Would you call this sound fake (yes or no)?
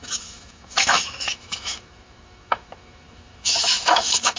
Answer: yes